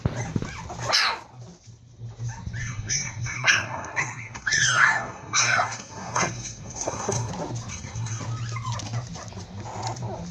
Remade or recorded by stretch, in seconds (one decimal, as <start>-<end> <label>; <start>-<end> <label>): 0.0-2.6 recorded; 2.6-7.3 remade; 7.3-7.7 recorded; 7.7-8.2 remade; 8.2-10.3 recorded

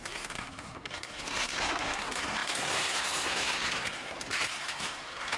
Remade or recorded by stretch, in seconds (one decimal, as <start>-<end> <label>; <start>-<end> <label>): 0.0-5.4 remade

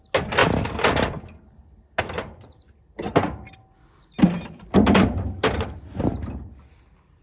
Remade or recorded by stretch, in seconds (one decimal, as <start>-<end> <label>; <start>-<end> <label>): 0.0-7.2 recorded

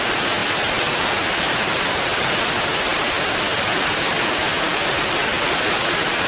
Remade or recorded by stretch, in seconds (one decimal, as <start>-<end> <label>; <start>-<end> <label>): 0.0-6.3 recorded

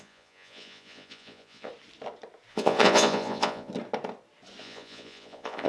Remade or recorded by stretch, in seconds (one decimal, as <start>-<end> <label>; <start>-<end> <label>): 0.0-1.7 remade; 1.7-2.5 recorded; 2.5-3.7 remade; 3.7-4.6 recorded; 4.6-5.7 remade

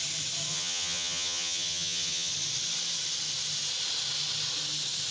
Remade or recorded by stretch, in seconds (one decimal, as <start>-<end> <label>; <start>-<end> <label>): 0.0-0.5 recorded; 0.5-2.3 remade; 2.3-5.1 recorded

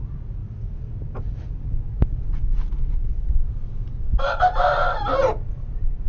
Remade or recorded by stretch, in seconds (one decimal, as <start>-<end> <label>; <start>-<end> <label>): 0.0-6.1 recorded

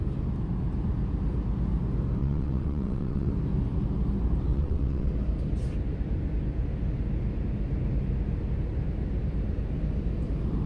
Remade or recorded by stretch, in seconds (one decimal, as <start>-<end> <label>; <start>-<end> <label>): 0.0-2.2 recorded; 2.2-3.3 remade; 3.3-4.5 recorded; 4.5-5.1 remade; 5.1-10.7 recorded